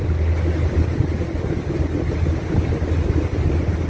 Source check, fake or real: real